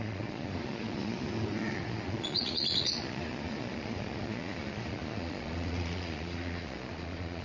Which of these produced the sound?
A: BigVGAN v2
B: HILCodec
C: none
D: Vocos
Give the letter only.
D